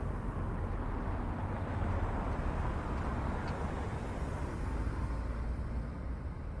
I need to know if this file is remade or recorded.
recorded